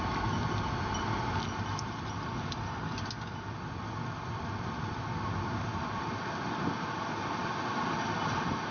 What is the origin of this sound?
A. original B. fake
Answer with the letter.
A